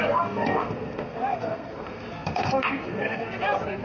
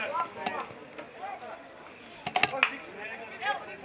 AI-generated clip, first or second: first